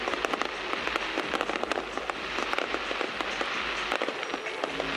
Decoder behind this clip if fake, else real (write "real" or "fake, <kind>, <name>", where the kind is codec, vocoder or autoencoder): real